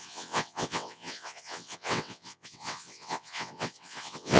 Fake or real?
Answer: fake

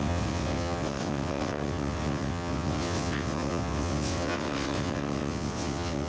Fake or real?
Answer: fake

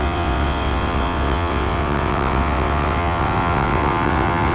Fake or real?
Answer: fake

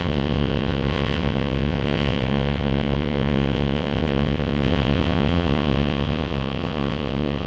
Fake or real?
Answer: fake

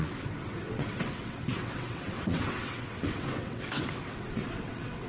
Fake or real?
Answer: fake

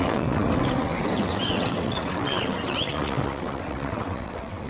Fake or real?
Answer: fake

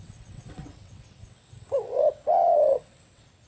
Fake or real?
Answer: fake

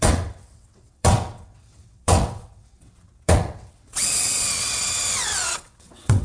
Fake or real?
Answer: fake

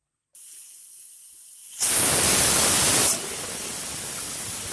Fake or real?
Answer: real